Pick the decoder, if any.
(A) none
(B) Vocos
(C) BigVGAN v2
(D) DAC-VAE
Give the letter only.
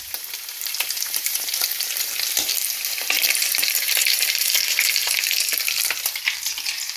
C